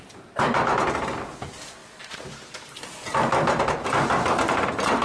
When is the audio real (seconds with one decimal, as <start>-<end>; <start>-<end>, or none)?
0.0-1.8; 3.6-5.0